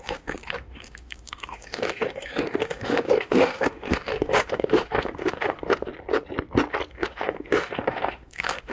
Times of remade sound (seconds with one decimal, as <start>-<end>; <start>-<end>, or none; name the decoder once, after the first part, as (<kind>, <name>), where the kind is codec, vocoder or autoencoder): 0.0-5.9 (autoencoder, DAC-VAE); 6.9-8.7